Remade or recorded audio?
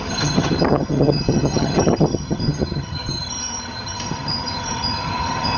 remade